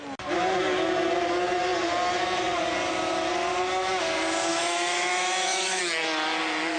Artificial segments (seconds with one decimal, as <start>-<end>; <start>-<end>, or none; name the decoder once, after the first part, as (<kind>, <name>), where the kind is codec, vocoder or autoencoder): 4.5-5.8 (autoencoder, DAC-VAE)